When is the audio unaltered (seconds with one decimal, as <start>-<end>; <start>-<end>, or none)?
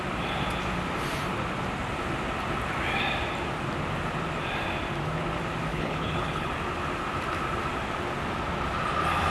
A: 0.0-5.7; 6.5-9.3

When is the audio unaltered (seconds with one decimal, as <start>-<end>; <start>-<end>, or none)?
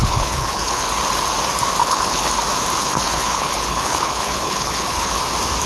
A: 0.9-1.8; 2.3-2.8; 5.2-5.7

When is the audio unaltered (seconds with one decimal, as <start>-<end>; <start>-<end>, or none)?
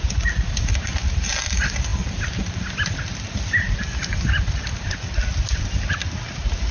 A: 0.0-6.7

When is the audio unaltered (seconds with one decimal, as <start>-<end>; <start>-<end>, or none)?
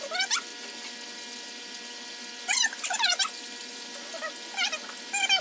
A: 0.0-5.4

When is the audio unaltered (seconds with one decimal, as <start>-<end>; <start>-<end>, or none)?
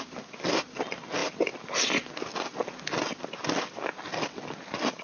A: 0.0-5.0